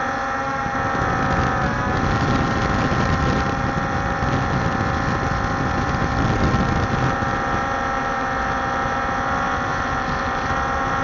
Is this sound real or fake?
real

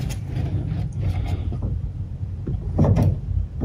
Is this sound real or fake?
fake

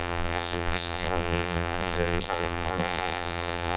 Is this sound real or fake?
fake